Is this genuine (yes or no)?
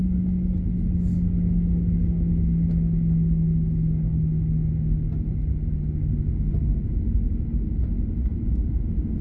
yes